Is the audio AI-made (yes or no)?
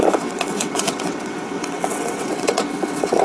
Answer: yes